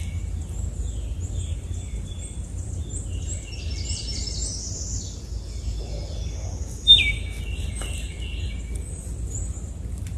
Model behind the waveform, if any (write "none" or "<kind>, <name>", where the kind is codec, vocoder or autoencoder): none